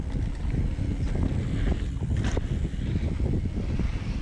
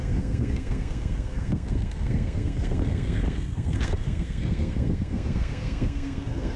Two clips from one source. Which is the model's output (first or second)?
second